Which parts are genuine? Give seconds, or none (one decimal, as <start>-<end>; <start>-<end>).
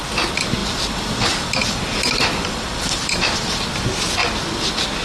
0.0-0.6; 3.6-5.0